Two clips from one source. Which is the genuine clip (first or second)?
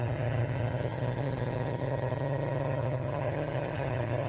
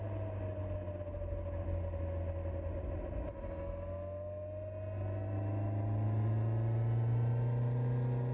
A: second